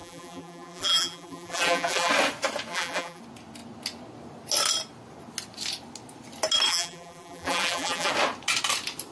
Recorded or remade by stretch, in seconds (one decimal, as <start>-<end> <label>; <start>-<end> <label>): 0.0-2.1 remade; 2.1-2.7 recorded; 2.7-3.2 remade; 3.2-6.7 recorded; 6.7-8.1 remade; 8.1-9.1 recorded